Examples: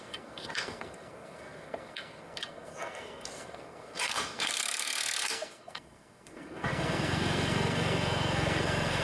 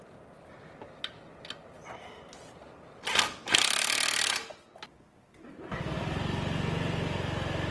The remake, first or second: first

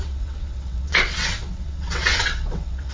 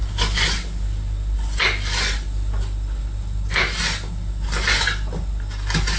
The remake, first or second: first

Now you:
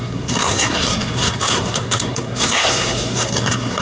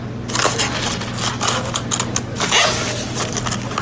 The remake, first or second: first